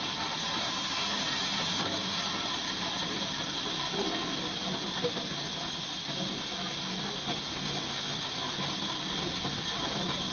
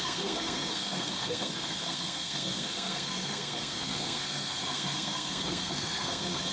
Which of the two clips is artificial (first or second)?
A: second